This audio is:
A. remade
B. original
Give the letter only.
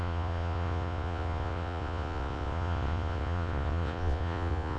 A